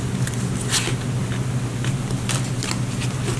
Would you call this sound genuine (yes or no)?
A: yes